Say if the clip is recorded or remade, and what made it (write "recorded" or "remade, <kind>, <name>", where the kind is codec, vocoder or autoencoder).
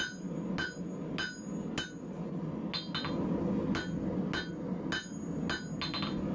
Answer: recorded